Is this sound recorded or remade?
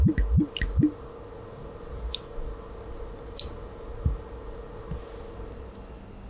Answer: recorded